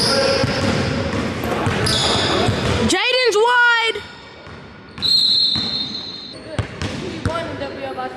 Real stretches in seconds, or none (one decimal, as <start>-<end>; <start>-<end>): 0.0-8.2